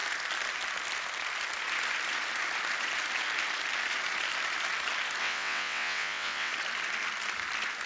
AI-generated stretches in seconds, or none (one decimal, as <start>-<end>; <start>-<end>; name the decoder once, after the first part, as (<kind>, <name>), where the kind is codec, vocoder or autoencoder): 5.2-6.5 (vocoder, WaveNeXt)